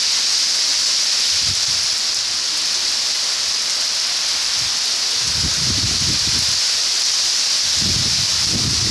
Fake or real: real